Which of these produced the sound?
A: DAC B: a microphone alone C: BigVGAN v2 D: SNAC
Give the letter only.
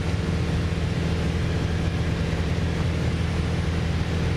B